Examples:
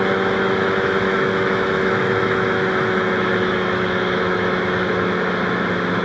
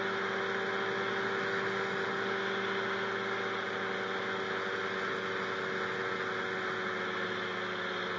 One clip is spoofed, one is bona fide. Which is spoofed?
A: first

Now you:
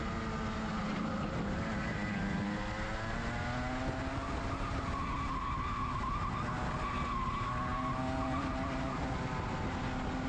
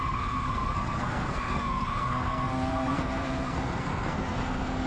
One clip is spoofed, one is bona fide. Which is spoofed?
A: second